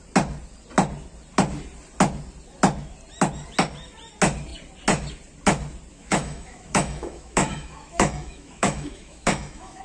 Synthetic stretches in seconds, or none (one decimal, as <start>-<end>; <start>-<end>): 5.9-9.8